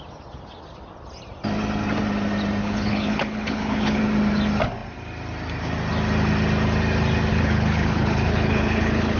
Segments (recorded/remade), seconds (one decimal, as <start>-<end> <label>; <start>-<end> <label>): 0.0-2.6 recorded; 2.6-4.0 remade; 4.0-7.3 recorded; 7.3-9.2 remade